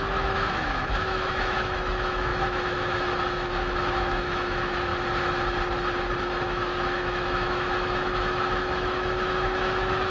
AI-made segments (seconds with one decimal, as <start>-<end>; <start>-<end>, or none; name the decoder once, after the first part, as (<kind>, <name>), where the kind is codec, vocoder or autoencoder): 0.0-4.9 (autoencoder, DAC-VAE); 6.2-10.1